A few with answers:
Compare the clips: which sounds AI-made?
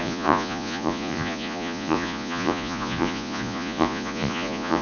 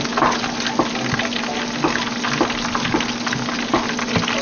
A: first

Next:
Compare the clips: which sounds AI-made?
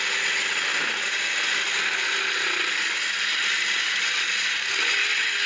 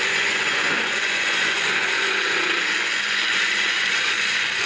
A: second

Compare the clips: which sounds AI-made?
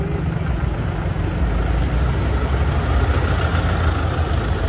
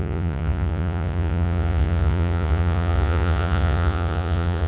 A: second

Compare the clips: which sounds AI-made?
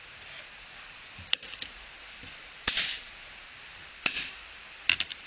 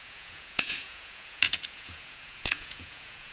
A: second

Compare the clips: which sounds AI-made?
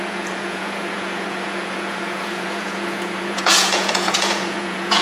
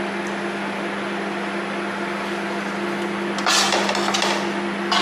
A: first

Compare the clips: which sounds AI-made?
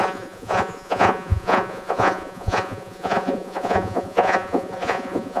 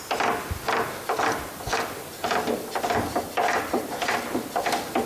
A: first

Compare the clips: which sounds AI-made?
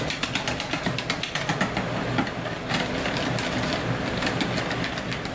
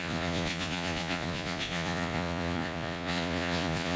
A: second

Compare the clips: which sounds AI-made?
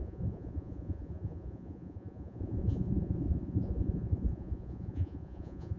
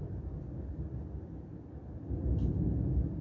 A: first